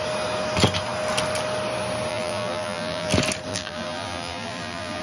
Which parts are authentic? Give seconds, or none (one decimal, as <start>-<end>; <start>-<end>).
0.0-2.1; 3.1-3.5